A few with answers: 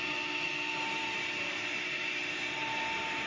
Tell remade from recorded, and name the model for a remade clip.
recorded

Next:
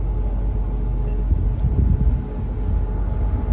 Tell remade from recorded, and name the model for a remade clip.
recorded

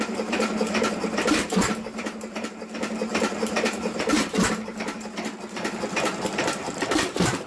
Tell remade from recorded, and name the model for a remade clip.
remade, vocoder, BigVGAN v2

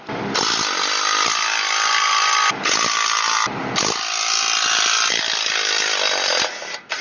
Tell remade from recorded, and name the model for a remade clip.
recorded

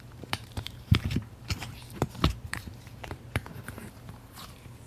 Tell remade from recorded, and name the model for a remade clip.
remade, vocoder, BigVGAN v2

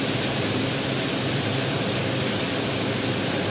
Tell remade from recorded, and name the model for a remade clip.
remade, vocoder, BigVGAN v2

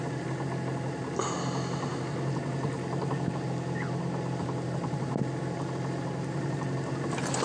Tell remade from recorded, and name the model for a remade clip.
recorded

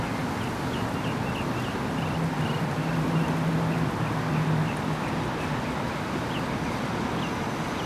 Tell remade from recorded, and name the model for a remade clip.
recorded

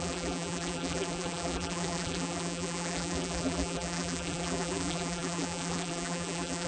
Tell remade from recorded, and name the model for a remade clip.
remade, vocoder, BigVGAN v2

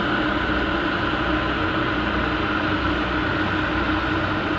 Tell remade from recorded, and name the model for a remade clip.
recorded